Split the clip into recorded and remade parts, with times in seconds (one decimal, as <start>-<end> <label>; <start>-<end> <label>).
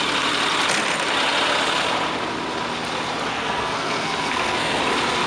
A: 0.0-3.3 recorded; 3.3-4.8 remade; 4.8-5.3 recorded